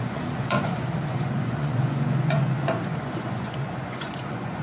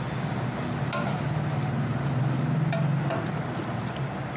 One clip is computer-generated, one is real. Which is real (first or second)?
second